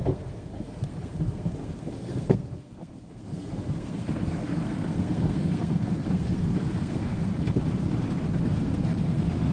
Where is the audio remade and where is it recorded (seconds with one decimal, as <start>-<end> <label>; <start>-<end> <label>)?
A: 0.0-7.3 remade; 7.3-8.4 recorded; 8.4-9.5 remade